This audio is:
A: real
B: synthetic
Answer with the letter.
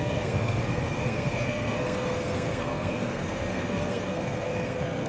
B